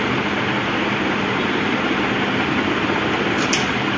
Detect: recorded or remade remade